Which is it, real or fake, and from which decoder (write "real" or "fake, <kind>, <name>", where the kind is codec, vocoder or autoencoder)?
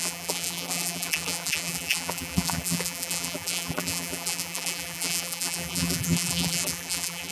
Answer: fake, vocoder, BigVGAN v2